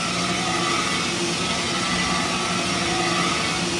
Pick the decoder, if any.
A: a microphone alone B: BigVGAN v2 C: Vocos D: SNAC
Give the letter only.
A